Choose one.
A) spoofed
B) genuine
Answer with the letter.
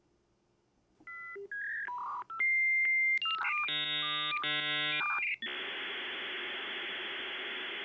B